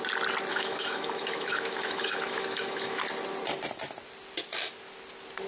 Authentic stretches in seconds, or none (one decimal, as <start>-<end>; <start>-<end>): 0.0-0.5; 3.0-5.5